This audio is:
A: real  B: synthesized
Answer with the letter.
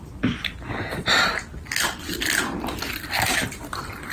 A